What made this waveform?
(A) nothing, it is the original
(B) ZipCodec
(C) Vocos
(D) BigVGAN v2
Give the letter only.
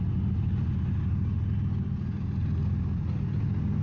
A